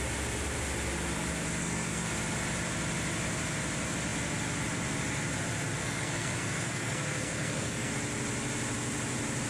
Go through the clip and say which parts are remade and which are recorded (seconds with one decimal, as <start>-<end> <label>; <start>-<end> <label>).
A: 0.0-1.6 recorded; 1.6-2.1 remade; 2.1-5.8 recorded; 5.8-7.9 remade; 7.9-9.5 recorded